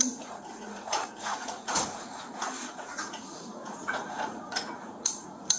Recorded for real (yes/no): no